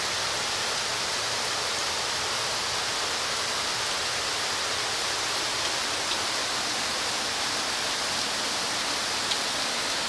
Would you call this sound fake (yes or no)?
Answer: no